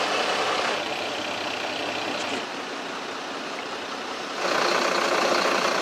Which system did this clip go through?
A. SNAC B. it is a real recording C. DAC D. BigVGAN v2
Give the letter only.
B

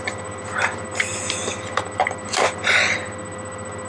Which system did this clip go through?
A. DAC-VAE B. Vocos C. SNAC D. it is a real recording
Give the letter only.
D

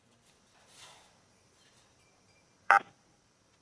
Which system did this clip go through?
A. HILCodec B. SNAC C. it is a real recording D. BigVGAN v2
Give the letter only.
D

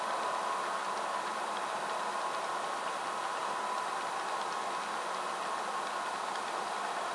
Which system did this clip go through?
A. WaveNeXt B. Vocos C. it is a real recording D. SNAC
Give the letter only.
C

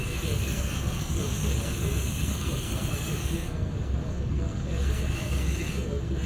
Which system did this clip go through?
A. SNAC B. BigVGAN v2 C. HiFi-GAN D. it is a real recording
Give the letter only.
A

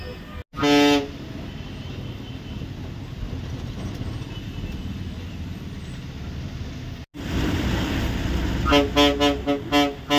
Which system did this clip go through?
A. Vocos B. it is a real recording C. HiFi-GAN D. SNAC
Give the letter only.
B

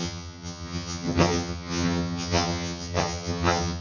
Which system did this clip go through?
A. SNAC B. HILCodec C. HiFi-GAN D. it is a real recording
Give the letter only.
C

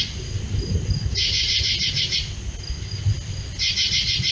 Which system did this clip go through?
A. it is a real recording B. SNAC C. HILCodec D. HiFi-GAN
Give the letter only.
A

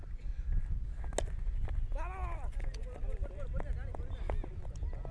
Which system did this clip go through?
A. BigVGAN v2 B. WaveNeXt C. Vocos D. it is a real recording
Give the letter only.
D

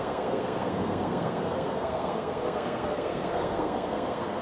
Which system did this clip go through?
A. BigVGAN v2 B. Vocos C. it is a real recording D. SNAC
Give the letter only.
D